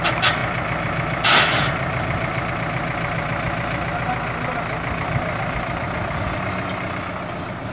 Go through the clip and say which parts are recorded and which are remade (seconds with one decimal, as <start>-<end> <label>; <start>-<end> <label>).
0.0-0.4 recorded; 0.4-2.5 remade; 2.5-7.7 recorded